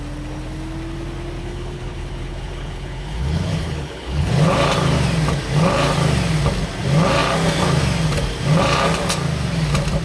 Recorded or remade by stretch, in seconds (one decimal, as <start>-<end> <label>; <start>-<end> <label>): 0.0-1.4 recorded; 1.4-4.3 remade; 4.3-10.0 recorded